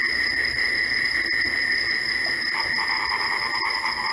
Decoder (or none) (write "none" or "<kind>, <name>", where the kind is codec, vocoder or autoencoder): none